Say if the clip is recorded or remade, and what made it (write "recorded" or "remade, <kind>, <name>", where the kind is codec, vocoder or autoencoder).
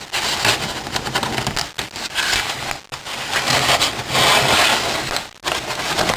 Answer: recorded